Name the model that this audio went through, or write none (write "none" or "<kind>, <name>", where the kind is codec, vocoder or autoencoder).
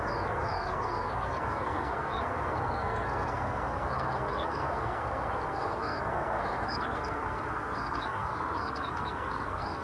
codec, SNAC